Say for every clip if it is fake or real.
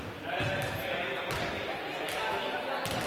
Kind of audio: real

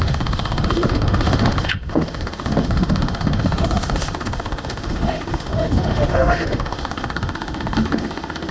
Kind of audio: fake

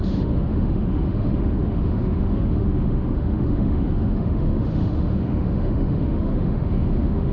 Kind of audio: fake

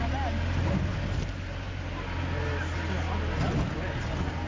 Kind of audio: real